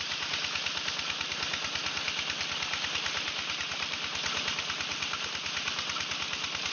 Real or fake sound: real